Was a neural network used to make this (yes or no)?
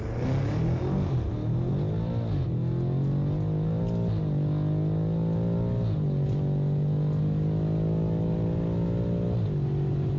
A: no